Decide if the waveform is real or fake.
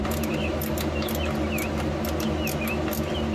real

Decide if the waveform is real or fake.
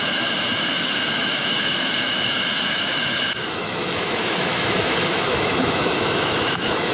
fake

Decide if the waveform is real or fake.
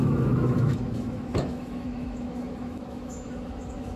fake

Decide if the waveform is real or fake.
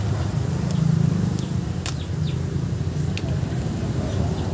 real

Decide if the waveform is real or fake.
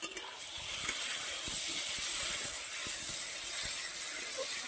real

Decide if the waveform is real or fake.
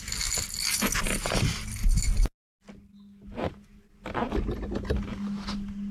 real